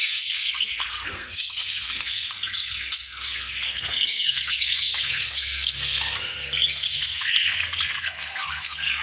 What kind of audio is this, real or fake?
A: fake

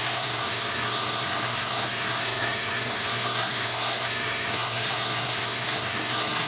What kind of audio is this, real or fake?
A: fake